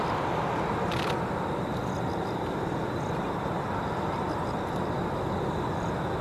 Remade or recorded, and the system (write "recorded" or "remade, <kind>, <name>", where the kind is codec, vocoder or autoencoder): recorded